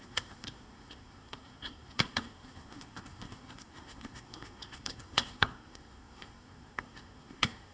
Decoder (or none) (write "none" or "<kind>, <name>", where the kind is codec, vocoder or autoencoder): codec, SNAC